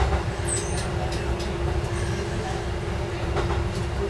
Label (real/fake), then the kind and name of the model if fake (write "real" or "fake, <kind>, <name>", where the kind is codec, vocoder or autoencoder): real